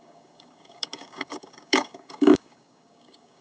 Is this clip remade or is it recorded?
remade